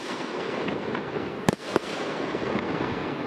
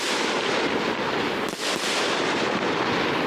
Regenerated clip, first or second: first